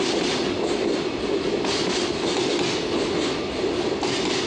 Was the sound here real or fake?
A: real